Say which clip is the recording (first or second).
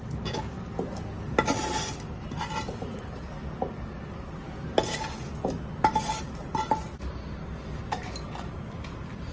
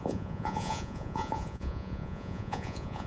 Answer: first